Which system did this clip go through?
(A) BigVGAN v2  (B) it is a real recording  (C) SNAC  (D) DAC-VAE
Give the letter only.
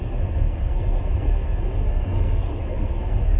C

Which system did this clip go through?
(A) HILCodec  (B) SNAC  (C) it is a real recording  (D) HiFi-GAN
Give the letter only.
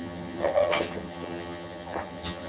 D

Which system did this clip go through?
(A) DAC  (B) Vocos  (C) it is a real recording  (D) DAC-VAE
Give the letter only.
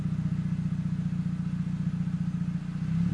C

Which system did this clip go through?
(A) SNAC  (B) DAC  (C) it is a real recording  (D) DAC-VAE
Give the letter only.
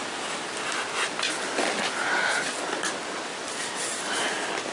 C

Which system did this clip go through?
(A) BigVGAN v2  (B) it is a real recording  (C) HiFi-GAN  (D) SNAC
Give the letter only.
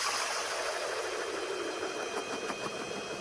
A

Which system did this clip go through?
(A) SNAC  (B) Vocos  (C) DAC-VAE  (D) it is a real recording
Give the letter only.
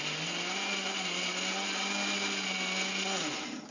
D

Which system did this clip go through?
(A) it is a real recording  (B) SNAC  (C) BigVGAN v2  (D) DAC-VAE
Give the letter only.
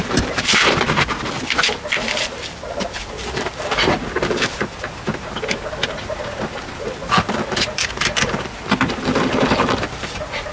C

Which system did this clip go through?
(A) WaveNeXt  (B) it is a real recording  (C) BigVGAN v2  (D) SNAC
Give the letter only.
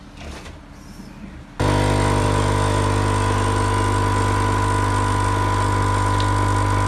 B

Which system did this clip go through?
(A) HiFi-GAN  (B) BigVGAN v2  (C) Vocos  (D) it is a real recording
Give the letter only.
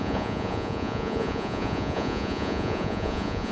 C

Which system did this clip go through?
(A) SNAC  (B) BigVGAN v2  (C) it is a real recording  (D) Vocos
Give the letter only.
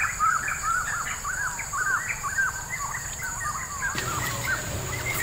B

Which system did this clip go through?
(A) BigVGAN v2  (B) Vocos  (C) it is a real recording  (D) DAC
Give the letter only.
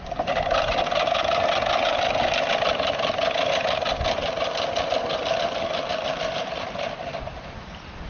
C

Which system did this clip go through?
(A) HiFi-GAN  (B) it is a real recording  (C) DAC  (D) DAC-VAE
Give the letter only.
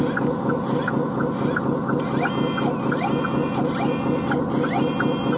B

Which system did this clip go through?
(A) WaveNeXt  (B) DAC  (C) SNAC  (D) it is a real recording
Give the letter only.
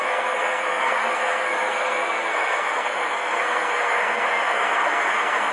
C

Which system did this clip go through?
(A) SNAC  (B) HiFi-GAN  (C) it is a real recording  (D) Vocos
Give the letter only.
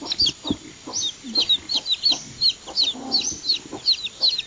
C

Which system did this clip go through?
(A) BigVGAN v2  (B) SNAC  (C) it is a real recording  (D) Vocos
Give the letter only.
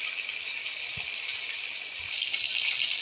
C